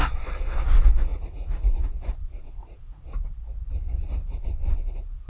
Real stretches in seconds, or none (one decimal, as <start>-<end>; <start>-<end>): 0.0-1.1; 3.0-5.3